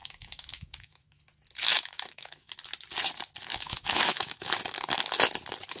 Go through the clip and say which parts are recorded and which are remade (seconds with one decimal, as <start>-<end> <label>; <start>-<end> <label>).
0.0-1.2 remade; 1.2-1.7 recorded; 1.7-2.5 remade; 2.5-3.5 recorded; 3.5-4.5 remade; 4.5-5.8 recorded